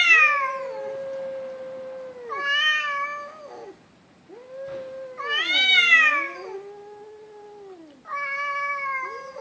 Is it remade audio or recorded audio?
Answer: recorded